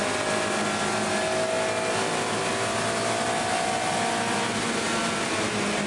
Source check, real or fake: real